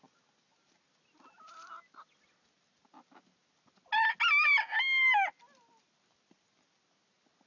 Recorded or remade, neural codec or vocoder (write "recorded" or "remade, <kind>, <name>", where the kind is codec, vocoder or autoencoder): recorded